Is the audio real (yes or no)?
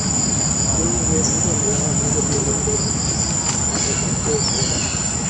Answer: yes